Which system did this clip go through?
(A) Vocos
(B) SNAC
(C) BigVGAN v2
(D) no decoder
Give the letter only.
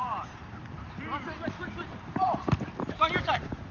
C